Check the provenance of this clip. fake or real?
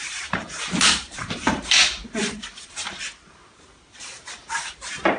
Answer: fake